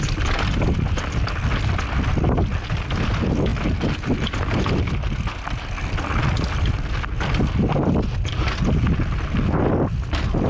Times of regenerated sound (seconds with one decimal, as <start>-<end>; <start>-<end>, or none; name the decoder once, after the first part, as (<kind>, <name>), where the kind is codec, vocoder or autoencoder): none